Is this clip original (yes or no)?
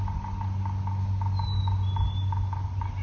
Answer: yes